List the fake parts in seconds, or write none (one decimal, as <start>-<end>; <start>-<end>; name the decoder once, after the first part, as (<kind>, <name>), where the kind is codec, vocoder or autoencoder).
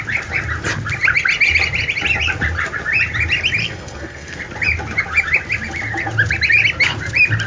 3.6-4.4 (codec, SNAC)